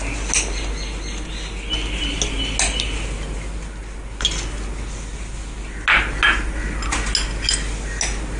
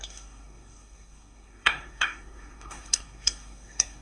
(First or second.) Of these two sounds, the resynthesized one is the second